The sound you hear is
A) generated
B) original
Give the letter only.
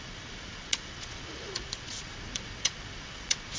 A